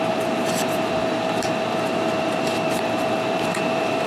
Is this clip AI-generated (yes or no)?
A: yes